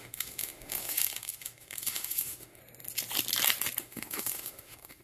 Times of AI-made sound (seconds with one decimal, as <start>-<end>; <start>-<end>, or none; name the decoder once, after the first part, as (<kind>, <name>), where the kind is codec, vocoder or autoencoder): 0.0-2.6 (autoencoder, DAC-VAE); 3.8-5.0